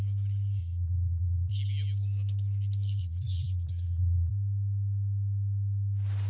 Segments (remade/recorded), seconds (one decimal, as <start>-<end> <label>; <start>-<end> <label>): 0.0-0.6 recorded; 0.6-1.5 remade; 1.5-3.0 recorded; 3.0-4.3 remade; 4.3-6.3 recorded